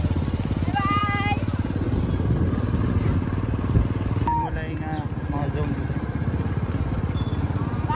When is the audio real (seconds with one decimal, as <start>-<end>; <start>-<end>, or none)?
0.0-7.9